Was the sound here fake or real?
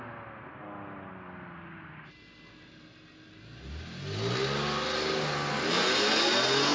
real